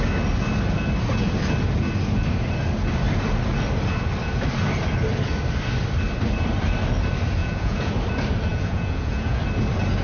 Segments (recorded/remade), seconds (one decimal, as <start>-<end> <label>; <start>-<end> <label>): 0.0-7.4 recorded; 7.4-7.9 remade; 7.9-8.5 recorded; 8.5-9.4 remade; 9.4-10.0 recorded